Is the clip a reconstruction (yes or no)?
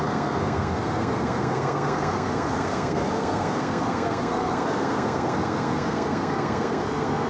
yes